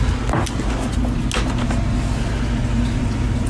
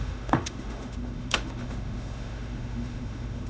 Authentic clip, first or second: first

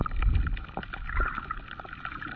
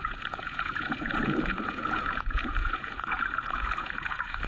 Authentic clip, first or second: first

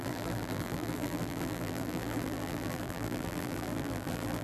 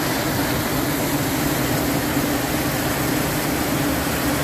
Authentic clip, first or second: second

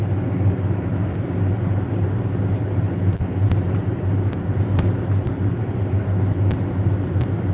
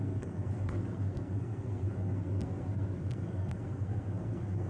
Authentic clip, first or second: first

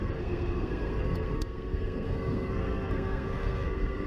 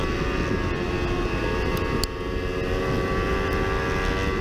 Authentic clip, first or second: second